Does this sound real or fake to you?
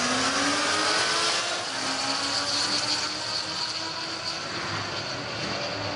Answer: real